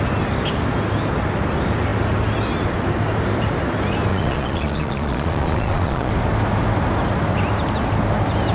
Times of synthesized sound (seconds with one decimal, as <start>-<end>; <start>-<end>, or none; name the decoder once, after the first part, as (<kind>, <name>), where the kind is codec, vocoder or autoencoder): 4.1-6.1 (vocoder, Vocos)